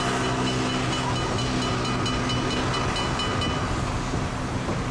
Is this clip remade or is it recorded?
recorded